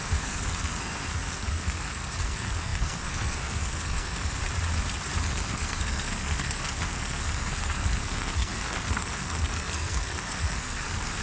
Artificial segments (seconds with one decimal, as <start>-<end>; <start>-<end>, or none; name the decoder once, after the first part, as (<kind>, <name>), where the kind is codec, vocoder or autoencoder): 0.0-4.4 (codec, SNAC); 5.2-11.2